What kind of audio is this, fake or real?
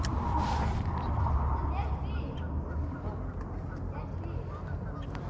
real